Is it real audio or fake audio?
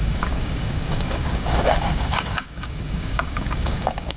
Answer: fake